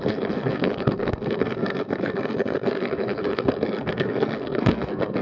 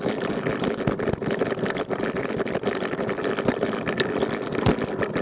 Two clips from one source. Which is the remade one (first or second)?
first